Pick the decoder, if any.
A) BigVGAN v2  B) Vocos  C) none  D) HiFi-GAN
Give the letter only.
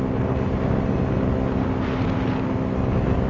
C